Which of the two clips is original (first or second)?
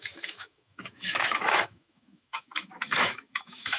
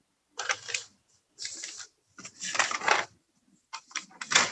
second